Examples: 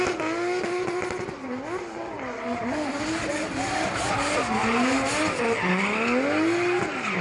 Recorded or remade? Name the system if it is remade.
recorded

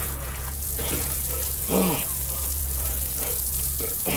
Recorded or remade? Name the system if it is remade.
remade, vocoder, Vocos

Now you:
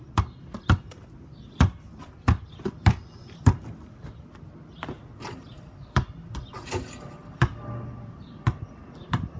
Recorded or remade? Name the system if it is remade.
recorded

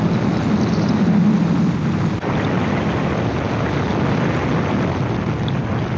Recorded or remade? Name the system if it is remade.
recorded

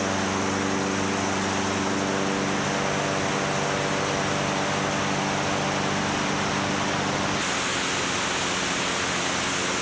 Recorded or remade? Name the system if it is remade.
recorded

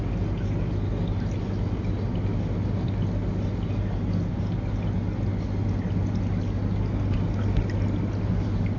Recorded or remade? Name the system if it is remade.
recorded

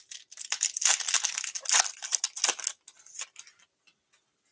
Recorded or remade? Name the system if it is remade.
recorded